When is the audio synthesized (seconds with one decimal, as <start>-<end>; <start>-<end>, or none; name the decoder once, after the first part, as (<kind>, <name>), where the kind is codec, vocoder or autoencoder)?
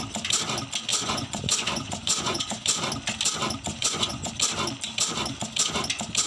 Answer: 0.9-2.8 (vocoder, Vocos); 3.7-4.3